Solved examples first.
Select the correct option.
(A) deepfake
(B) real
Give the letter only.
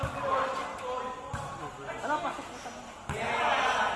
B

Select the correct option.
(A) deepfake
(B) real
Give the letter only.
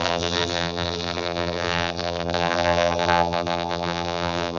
A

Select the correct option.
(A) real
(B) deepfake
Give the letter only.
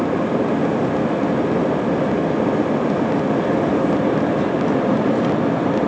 A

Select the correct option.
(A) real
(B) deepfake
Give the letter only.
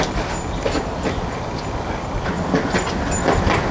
A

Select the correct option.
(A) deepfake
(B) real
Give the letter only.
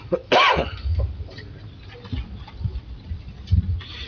B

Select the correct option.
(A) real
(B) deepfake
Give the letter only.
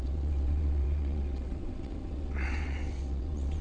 B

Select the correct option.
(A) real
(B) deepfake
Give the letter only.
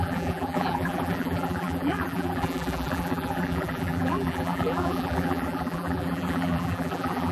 B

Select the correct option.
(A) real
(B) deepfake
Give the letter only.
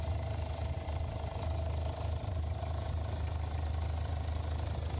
A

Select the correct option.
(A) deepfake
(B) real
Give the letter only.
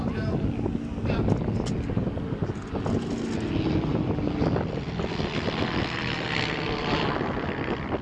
B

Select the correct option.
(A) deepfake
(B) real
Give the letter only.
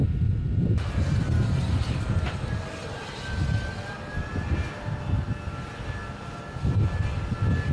B